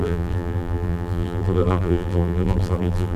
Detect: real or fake fake